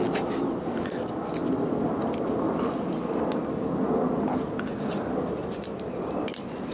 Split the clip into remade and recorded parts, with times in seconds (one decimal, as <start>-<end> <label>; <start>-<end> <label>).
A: 0.0-1.4 recorded; 1.4-3.2 remade; 3.2-4.7 recorded; 4.7-6.7 remade